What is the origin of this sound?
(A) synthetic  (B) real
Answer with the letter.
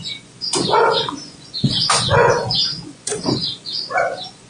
A